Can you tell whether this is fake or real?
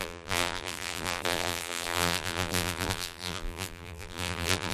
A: fake